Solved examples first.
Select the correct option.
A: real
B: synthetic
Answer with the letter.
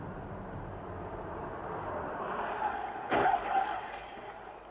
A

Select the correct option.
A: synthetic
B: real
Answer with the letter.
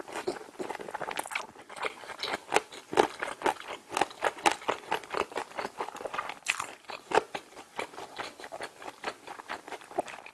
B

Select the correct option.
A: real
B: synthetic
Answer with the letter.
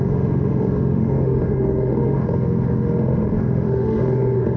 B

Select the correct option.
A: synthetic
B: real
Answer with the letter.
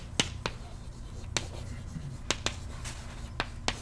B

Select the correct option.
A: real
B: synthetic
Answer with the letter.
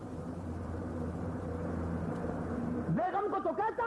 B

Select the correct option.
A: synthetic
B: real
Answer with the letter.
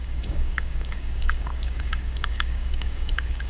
A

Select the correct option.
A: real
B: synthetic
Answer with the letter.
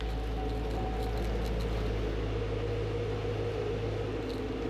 A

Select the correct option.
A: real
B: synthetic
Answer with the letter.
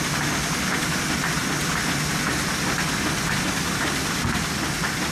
A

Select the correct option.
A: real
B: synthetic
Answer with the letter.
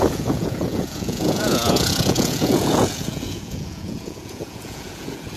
B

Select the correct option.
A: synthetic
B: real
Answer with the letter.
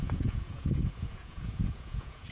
A